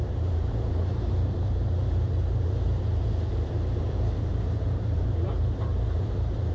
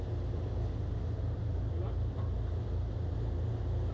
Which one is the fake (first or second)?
first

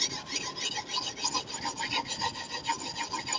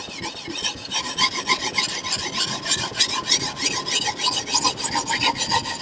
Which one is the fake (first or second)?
second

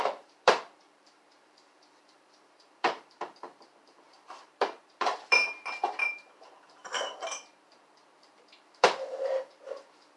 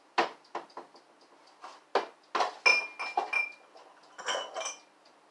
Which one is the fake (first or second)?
first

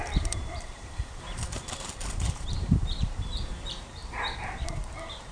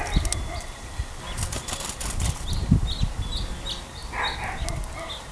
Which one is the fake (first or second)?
first